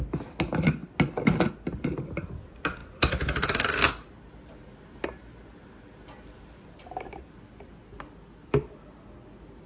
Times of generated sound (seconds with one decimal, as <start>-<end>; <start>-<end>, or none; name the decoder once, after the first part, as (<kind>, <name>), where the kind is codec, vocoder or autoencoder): none